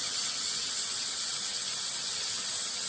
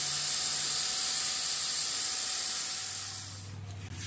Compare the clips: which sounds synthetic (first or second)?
first